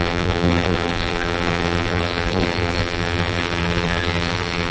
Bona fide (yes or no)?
no